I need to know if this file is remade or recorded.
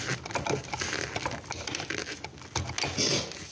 recorded